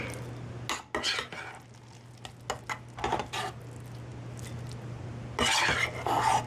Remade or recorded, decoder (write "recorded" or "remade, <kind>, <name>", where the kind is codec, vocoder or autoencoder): recorded